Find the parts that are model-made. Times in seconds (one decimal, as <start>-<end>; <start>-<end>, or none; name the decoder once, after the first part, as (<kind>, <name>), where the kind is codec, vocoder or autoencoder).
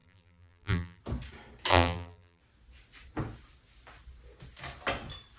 0.0-1.0 (vocoder, BigVGAN v2); 1.7-2.4